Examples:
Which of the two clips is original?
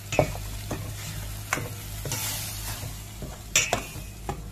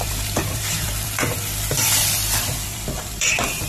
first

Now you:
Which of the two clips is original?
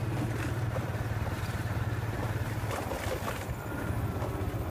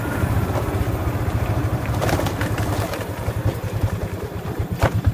first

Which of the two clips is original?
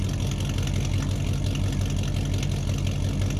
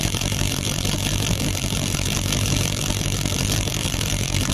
first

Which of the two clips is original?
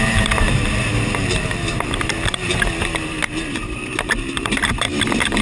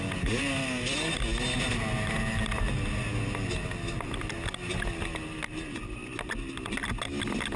second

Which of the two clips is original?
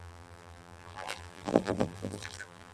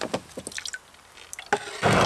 second